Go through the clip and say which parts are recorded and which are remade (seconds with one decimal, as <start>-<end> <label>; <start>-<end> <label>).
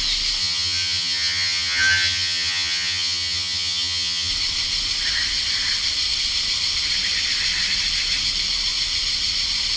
0.0-0.4 recorded; 0.4-4.3 remade; 4.3-9.8 recorded